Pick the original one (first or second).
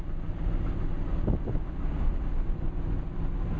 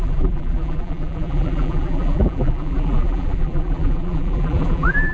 first